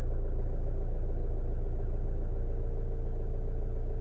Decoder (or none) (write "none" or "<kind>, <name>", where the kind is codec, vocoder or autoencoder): none